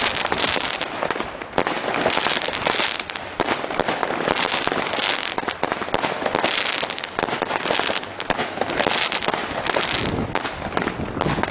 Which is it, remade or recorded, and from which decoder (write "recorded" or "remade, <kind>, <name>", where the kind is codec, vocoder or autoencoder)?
recorded